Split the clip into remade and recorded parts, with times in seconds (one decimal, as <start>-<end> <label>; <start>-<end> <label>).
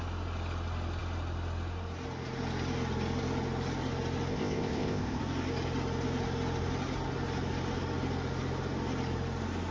0.0-4.3 recorded; 4.3-5.2 remade; 5.2-9.7 recorded